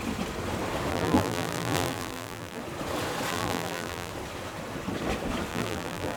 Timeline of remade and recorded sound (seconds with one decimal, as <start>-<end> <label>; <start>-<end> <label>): 0.0-0.9 recorded; 0.9-2.6 remade; 2.6-3.3 recorded; 3.3-4.1 remade; 4.1-5.5 recorded; 5.5-6.2 remade